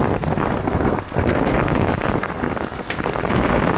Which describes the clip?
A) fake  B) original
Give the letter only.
A